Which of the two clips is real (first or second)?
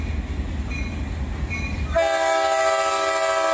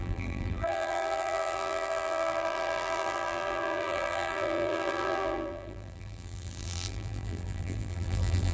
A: first